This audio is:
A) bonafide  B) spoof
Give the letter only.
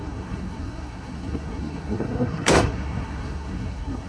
B